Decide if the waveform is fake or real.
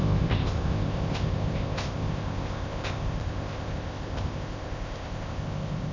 fake